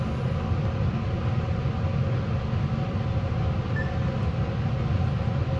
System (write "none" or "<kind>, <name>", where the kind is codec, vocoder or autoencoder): none